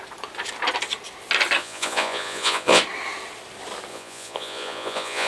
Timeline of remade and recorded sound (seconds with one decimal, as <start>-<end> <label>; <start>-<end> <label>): 0.0-1.6 recorded; 1.6-2.8 remade; 2.8-3.9 recorded; 3.9-5.3 remade